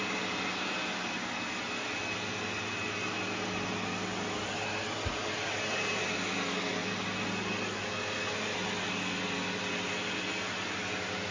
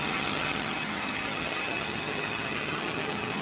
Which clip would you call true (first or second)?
first